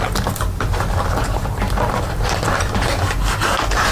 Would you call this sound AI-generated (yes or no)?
no